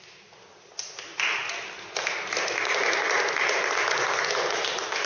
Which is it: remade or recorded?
recorded